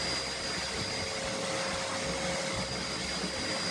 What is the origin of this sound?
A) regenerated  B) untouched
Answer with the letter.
B